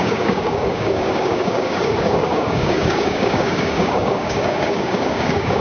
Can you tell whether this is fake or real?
fake